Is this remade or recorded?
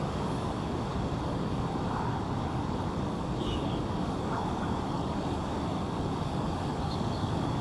remade